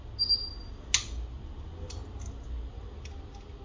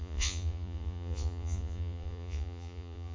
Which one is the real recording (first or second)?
first